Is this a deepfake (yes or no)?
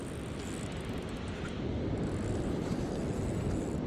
no